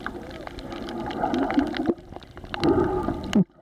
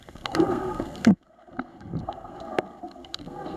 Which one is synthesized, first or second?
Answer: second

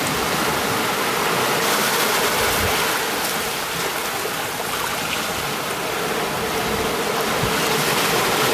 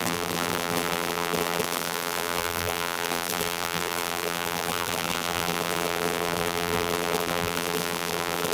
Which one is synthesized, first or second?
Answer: second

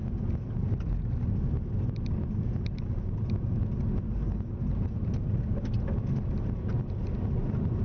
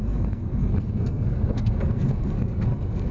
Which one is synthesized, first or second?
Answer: second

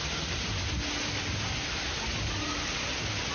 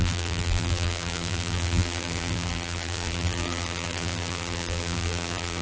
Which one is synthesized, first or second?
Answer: second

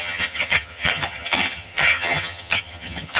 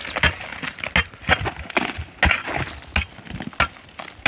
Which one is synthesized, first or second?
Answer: first